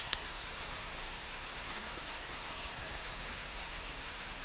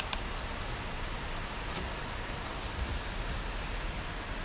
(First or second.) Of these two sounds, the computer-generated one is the first